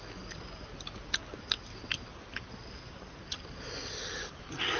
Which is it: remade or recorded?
recorded